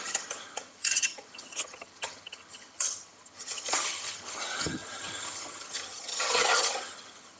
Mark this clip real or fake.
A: fake